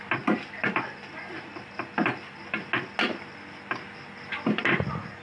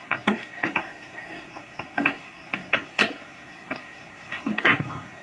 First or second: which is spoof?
second